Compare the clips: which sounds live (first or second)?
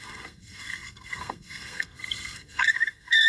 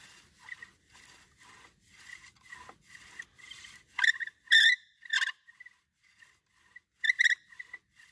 second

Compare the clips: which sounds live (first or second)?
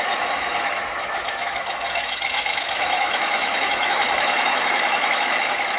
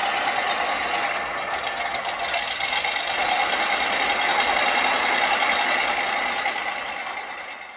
second